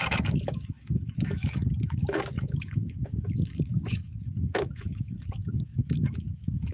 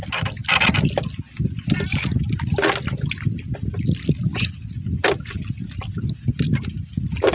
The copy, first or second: first